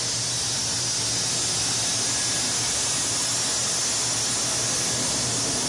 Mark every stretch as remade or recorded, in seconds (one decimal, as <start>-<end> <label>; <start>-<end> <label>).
0.0-5.7 recorded